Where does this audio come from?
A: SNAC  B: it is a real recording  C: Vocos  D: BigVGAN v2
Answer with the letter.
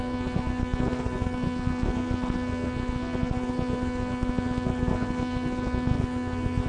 A